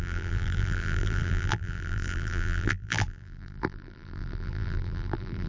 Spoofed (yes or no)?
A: yes